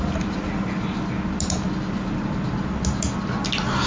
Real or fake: real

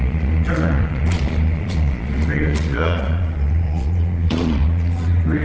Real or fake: fake